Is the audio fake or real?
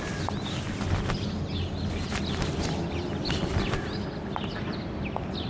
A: real